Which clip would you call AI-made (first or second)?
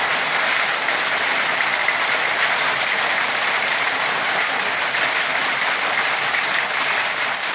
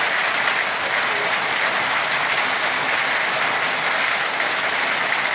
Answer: first